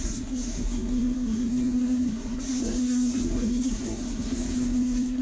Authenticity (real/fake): fake